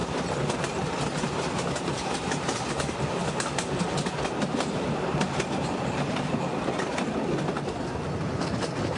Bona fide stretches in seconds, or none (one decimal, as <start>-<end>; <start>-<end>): 0.0-0.6; 3.2-4.4; 6.5-7.4